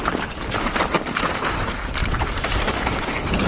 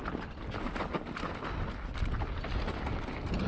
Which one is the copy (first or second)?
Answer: first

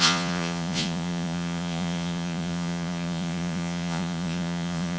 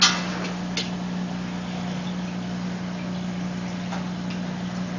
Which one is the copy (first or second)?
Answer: first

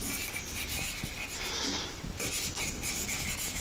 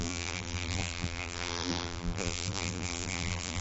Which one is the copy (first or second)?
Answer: second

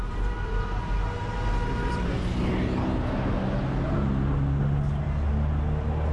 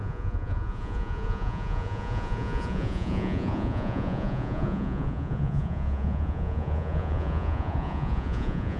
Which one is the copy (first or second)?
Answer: second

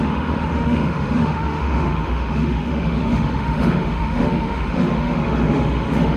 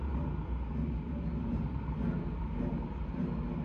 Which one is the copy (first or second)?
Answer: first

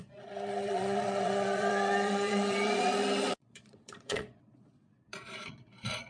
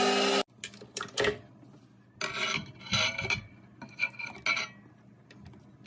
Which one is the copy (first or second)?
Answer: first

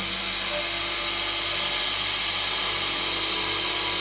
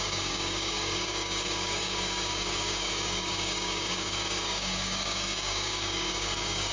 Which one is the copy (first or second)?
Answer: second